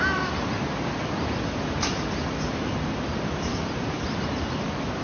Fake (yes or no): no